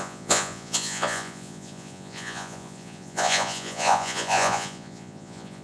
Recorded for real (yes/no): no